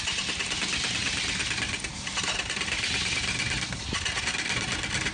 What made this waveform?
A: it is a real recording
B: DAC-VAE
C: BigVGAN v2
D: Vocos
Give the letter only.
A